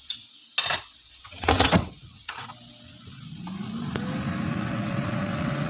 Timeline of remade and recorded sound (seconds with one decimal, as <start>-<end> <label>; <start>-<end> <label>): 0.0-0.4 remade; 0.4-1.1 recorded; 1.1-2.5 remade; 2.5-4.5 recorded; 4.5-5.7 remade